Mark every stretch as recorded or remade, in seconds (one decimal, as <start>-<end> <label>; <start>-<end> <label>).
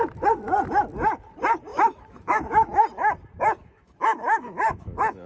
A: 0.0-1.7 recorded; 1.7-2.7 remade; 2.7-3.6 recorded; 3.6-5.3 remade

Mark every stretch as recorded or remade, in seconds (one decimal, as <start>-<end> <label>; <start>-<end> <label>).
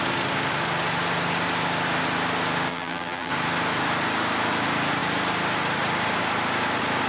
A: 0.0-2.7 recorded; 2.7-3.3 remade; 3.3-7.1 recorded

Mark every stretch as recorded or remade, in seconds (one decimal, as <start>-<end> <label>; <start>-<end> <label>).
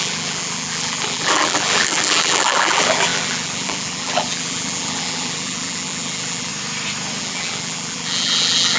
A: 0.0-6.5 remade; 6.5-7.2 recorded; 7.2-8.8 remade